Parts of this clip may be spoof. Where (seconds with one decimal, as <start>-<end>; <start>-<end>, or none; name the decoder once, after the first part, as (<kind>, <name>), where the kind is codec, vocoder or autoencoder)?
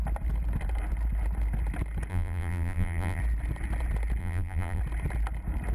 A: 2.1-3.2 (vocoder, BigVGAN v2); 4.2-4.8